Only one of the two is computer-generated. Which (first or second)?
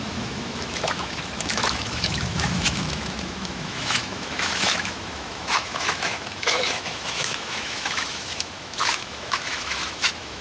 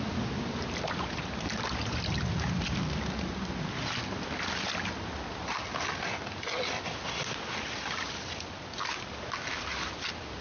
first